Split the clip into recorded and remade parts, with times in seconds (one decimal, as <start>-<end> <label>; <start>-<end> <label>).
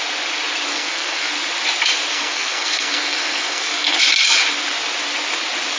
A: 0.0-0.7 recorded; 0.7-1.3 remade; 1.3-2.1 recorded; 2.1-4.0 remade; 4.0-5.8 recorded